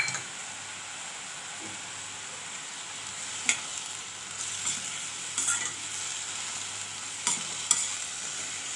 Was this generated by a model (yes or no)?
no